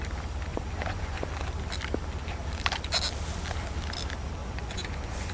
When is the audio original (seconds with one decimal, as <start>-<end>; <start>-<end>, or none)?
0.0-0.5; 1.3-4.4